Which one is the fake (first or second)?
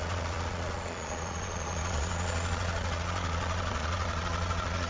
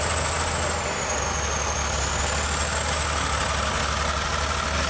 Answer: first